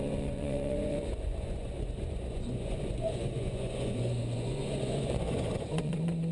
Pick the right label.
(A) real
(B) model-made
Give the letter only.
B